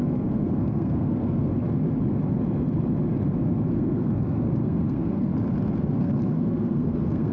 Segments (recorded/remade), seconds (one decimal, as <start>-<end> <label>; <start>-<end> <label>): 0.0-1.5 remade; 1.5-3.7 recorded; 3.7-5.3 remade; 5.3-6.0 recorded; 6.0-7.3 remade